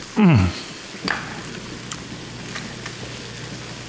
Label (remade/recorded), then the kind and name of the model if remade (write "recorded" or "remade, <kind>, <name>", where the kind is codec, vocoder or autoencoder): recorded